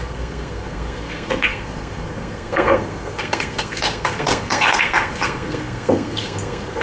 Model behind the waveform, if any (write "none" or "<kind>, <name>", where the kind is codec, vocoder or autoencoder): codec, SNAC